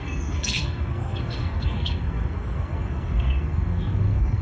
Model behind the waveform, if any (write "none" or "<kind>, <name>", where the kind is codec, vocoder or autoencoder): codec, SNAC